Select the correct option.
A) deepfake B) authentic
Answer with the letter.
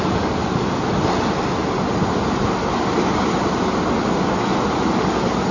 B